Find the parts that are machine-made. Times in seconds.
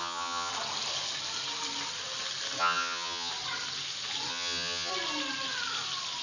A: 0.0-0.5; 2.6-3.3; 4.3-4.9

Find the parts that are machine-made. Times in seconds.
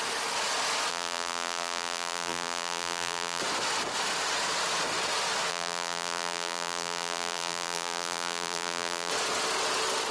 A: 0.9-3.4; 5.5-9.1